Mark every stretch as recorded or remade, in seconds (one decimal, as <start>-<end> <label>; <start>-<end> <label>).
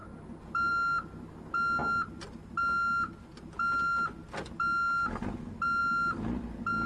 0.0-6.9 recorded